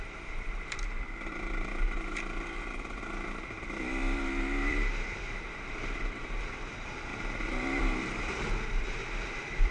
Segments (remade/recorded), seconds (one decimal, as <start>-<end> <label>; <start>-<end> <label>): 0.0-7.1 remade; 7.1-7.8 recorded; 7.8-9.7 remade